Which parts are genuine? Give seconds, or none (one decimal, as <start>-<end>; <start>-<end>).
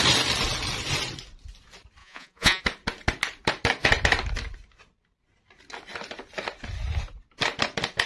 0.0-2.0; 2.6-8.1